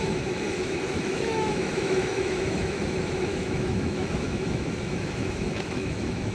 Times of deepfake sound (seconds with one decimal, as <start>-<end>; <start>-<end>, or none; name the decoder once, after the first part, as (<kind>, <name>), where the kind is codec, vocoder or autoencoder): 0.0-6.3 (autoencoder, DAC-VAE)